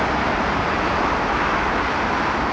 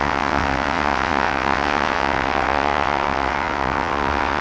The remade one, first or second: second